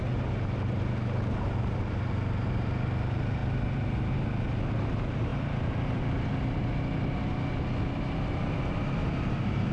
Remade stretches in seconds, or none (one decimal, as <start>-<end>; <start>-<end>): none

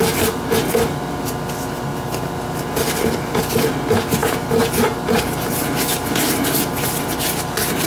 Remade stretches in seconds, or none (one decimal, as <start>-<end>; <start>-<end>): none

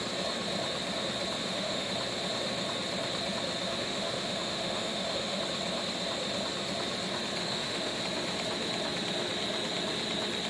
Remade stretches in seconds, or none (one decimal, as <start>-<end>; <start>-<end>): 1.4-1.9; 3.6-5.4; 7.4-8.0

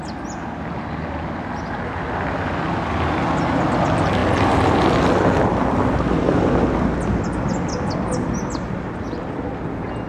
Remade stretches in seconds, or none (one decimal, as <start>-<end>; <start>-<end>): none

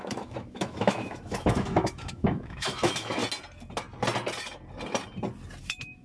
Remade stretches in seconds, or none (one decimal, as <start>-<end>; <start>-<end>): 0.0-3.2; 5.6-6.0

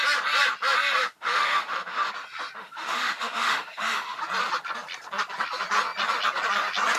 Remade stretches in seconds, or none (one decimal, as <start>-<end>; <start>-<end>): 1.0-2.1; 2.6-4.2